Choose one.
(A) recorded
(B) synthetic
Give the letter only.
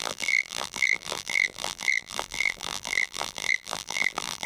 B